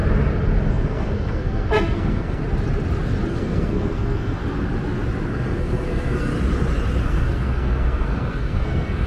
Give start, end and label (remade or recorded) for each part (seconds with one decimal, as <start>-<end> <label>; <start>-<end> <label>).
0.0-0.7 recorded; 0.7-2.4 remade; 2.4-3.3 recorded; 3.3-4.4 remade; 4.4-5.3 recorded; 5.3-6.3 remade; 6.3-7.0 recorded; 7.0-9.1 remade